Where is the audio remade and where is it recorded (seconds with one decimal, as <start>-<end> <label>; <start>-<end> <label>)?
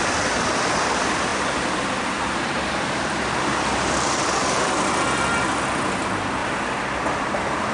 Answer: 0.0-1.3 recorded; 1.3-4.6 remade; 4.6-7.7 recorded